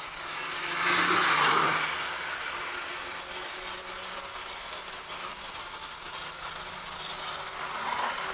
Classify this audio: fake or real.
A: real